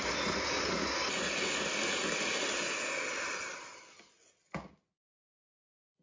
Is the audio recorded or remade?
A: recorded